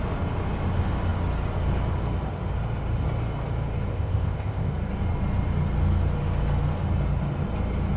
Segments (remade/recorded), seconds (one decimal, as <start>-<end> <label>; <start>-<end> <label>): 0.0-3.9 recorded; 3.9-4.7 remade; 4.7-8.0 recorded